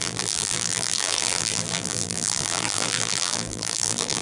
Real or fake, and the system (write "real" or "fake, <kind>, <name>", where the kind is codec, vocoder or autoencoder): fake, vocoder, BigVGAN v2